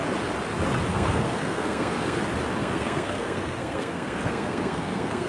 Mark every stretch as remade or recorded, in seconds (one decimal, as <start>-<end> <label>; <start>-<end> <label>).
0.0-0.9 recorded; 0.9-2.2 remade; 2.2-2.6 recorded; 2.6-5.3 remade